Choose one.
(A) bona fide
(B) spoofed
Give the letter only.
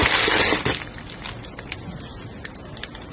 A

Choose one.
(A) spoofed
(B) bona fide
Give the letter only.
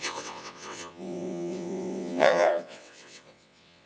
A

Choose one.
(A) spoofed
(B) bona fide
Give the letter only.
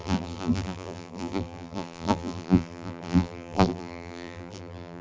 A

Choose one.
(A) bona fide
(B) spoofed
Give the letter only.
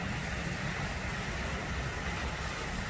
A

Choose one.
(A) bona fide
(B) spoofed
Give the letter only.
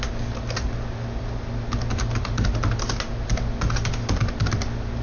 A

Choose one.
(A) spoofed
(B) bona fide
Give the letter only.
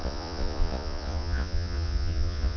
A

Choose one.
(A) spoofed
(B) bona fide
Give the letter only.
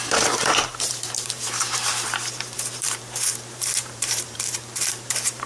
A